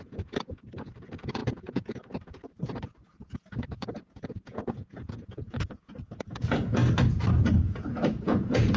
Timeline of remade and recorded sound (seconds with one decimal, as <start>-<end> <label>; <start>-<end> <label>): 0.0-6.8 remade; 6.8-7.5 recorded; 7.5-8.8 remade

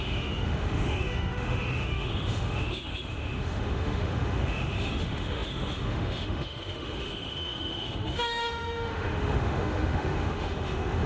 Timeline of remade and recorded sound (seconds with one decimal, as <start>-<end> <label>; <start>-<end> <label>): 0.0-11.1 remade

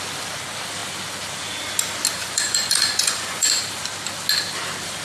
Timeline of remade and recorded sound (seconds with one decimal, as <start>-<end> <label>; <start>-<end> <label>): 0.0-2.2 recorded; 2.2-3.6 remade; 3.6-5.0 recorded

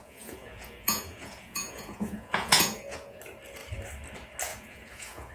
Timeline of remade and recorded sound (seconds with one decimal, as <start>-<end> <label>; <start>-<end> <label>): 0.0-3.2 remade; 3.2-4.5 recorded; 4.5-5.3 remade